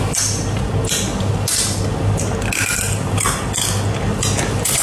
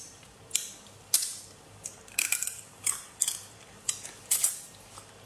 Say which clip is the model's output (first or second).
second